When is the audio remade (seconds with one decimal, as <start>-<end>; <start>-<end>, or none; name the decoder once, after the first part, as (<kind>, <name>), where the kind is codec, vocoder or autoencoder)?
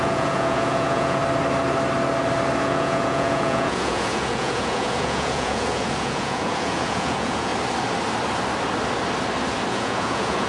0.0-1.2 (vocoder, Vocos); 2.6-7.5; 9.7-10.5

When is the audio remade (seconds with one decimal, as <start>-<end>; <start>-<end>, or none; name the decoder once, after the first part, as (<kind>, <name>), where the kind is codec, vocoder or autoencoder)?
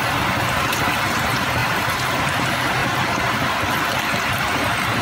0.0-2.8 (vocoder, BigVGAN v2)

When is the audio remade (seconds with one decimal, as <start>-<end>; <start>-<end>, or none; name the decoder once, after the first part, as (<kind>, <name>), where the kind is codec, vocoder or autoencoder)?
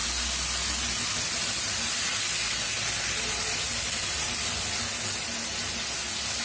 none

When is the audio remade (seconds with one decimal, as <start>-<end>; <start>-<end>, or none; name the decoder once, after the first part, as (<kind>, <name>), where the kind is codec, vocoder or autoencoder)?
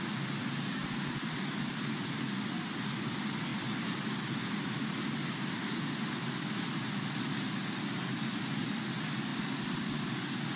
0.8-1.7 (vocoder, BigVGAN v2); 9.3-10.1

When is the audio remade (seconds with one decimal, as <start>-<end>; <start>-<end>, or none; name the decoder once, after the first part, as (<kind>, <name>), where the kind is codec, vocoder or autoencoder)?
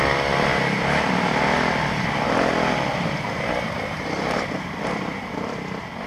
0.5-1.1 (vocoder, BigVGAN v2); 2.9-6.1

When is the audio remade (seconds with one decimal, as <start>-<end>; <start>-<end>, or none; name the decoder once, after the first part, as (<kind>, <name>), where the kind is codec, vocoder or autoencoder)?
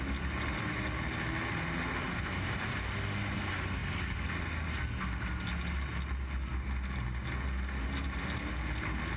none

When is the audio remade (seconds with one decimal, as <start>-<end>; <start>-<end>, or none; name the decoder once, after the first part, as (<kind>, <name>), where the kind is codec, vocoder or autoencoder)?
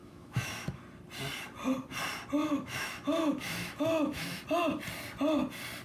0.0-0.8 (autoencoder, DAC-VAE); 2.4-4.4